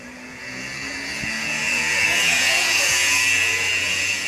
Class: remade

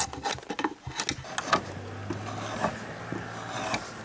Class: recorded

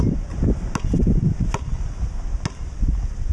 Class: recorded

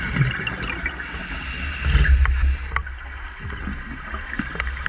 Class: recorded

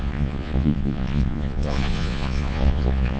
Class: remade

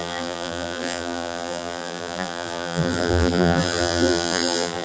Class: remade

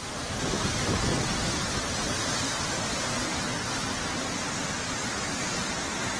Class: recorded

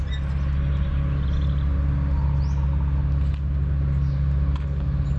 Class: recorded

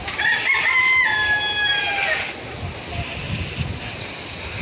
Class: recorded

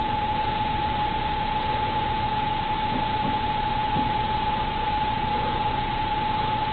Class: remade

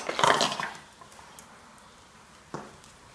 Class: recorded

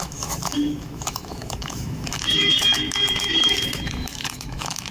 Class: remade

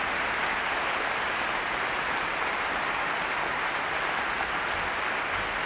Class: recorded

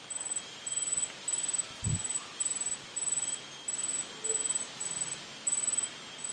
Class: recorded